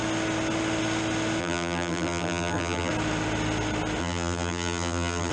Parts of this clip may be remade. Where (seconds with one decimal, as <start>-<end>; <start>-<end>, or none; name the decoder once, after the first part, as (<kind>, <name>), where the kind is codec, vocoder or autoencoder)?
1.4-2.9 (vocoder, BigVGAN v2); 4.0-5.3